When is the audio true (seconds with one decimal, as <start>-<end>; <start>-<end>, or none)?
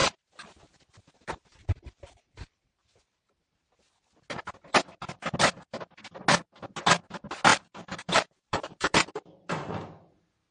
3.5-7.5; 9.1-10.5